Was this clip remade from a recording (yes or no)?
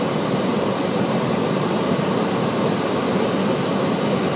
no